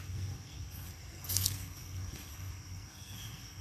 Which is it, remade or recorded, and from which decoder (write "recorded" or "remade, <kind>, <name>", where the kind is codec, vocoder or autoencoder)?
remade, codec, SNAC